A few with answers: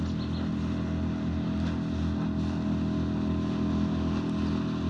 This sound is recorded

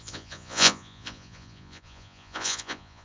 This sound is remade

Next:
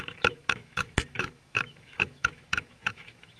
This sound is remade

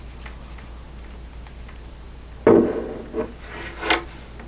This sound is recorded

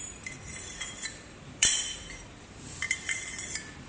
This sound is remade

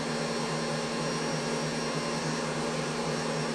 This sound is recorded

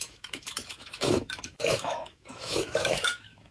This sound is remade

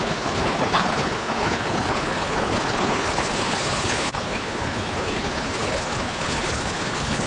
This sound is remade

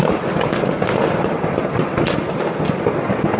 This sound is recorded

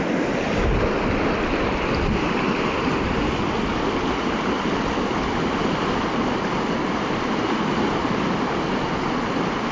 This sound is recorded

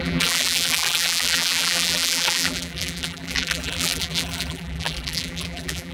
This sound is remade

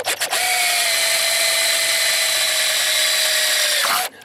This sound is recorded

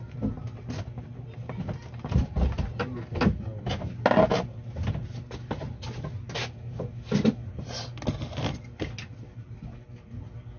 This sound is recorded